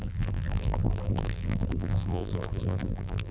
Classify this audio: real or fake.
fake